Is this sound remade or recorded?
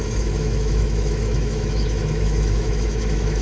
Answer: remade